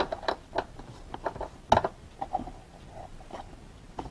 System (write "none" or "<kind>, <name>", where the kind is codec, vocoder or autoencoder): none